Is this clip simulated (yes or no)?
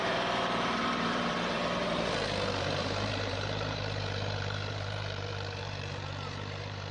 yes